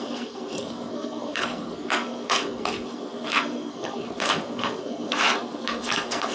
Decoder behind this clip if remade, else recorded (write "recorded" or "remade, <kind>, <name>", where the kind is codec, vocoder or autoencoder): remade, codec, SNAC